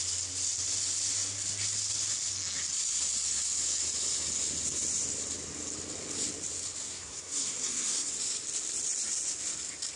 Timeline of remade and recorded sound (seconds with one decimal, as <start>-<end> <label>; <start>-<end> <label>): 0.0-6.8 recorded; 6.8-8.1 remade; 8.1-10.0 recorded